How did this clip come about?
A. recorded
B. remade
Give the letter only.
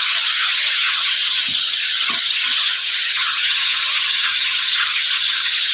B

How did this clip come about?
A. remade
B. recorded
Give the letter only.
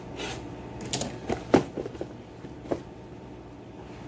B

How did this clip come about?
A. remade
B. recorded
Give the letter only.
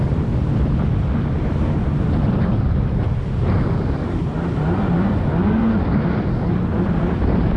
A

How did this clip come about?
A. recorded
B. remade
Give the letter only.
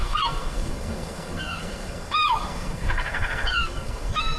B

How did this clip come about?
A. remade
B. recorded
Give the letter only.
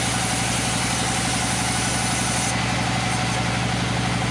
B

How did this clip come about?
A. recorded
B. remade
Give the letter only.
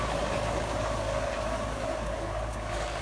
B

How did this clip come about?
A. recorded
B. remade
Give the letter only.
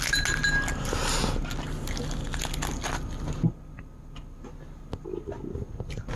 A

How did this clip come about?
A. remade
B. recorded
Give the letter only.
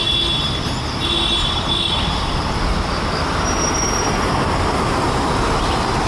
B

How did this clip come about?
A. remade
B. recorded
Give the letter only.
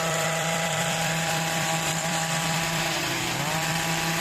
A